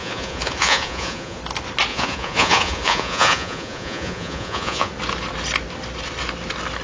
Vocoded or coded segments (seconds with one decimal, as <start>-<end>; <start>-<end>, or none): 0.0-1.4; 1.9-4.9